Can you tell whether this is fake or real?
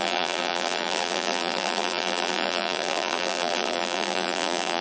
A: fake